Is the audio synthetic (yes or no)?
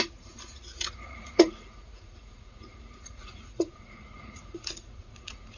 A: yes